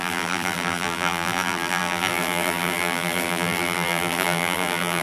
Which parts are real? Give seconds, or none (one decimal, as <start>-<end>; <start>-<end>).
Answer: none